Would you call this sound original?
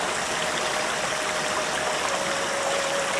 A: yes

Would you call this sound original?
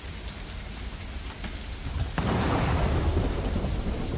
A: yes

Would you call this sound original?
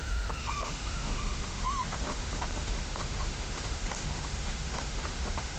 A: no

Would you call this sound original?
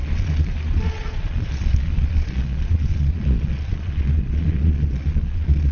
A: no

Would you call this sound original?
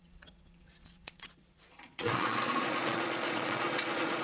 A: no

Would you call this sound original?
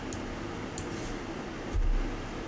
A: yes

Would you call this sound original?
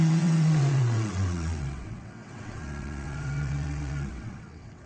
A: no